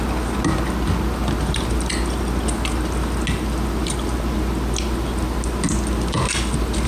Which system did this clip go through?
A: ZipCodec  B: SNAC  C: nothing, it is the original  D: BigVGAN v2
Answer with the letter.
C